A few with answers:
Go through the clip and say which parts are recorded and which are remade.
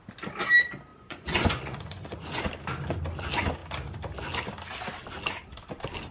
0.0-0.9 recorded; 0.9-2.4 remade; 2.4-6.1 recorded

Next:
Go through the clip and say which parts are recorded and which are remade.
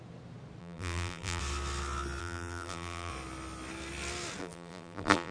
0.0-0.6 recorded; 0.6-1.4 remade; 1.4-2.2 recorded; 2.2-3.1 remade; 3.1-4.4 recorded; 4.4-5.3 remade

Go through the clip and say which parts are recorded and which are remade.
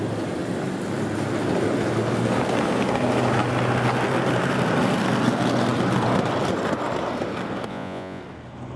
0.0-7.7 recorded; 7.7-8.2 remade; 8.2-8.8 recorded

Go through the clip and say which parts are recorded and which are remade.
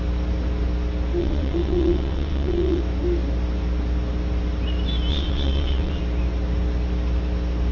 0.0-1.2 recorded; 1.2-2.8 remade; 2.8-5.1 recorded; 5.1-6.0 remade; 6.0-7.7 recorded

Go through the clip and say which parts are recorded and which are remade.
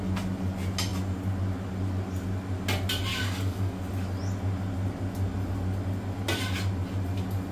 0.0-3.1 recorded; 3.1-3.8 remade; 3.8-7.5 recorded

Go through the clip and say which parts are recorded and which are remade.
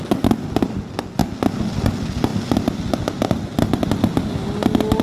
0.0-5.0 recorded